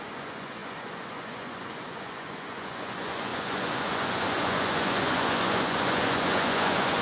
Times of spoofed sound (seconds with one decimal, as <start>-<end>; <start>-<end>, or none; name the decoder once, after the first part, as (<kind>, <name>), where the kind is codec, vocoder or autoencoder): 0.0-7.0 (vocoder, Vocos)

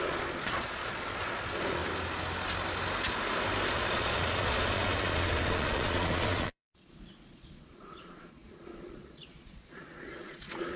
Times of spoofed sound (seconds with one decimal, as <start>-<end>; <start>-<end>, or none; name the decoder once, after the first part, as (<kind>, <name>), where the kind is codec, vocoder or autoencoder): 0.0-1.8 (vocoder, Vocos); 3.7-10.8

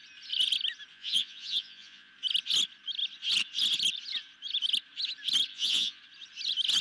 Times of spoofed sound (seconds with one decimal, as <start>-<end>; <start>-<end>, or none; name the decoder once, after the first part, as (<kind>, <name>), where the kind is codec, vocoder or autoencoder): 0.9-2.1 (vocoder, Vocos); 5.5-6.0

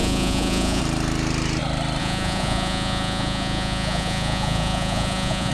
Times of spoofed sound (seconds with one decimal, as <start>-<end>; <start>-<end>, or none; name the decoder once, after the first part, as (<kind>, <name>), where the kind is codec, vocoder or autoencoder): 0.0-0.8 (vocoder, Vocos); 2.0-5.5